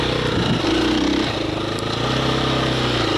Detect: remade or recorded recorded